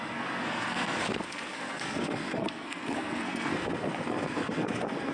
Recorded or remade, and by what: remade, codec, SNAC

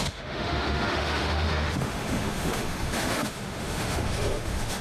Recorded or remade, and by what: remade, autoencoder, DAC-VAE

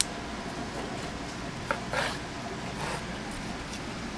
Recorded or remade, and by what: recorded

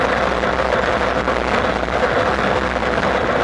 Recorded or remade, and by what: recorded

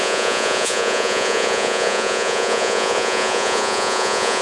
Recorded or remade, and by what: remade, vocoder, Vocos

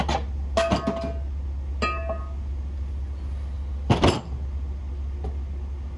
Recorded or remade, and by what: recorded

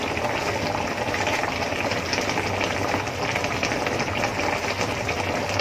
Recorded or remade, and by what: recorded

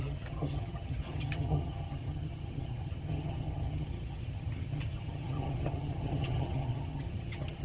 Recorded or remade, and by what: remade, vocoder, HiFi-GAN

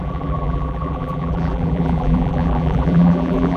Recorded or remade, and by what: remade, vocoder, BigVGAN v2